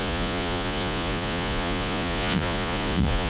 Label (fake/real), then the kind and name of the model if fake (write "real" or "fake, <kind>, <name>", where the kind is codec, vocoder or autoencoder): fake, vocoder, Vocos